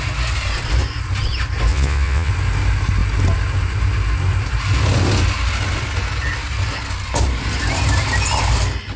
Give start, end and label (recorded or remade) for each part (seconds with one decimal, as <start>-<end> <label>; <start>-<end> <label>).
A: 0.0-1.7 recorded; 1.7-2.3 remade; 2.3-9.0 recorded